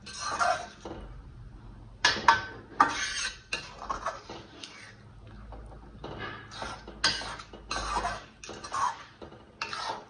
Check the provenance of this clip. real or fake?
real